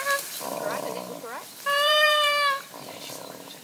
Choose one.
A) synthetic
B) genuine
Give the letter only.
A